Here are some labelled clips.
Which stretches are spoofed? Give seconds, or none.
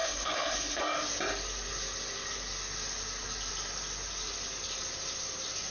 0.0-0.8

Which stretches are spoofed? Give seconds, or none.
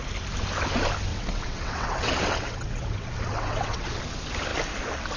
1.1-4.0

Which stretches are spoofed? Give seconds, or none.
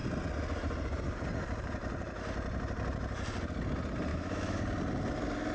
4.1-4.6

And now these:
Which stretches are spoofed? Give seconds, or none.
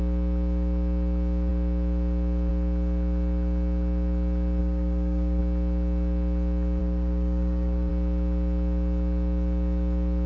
4.6-5.4; 6.8-7.9